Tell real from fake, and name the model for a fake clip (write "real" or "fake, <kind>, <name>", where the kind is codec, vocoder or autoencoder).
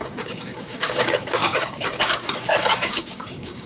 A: fake, codec, DAC